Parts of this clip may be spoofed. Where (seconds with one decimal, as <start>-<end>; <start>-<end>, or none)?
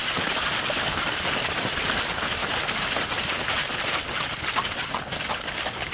none